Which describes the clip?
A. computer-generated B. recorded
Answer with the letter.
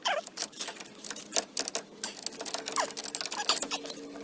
B